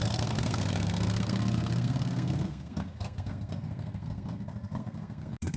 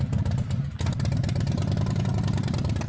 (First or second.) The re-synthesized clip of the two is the first